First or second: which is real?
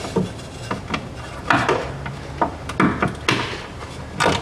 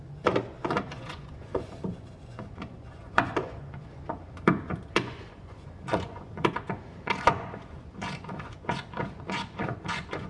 first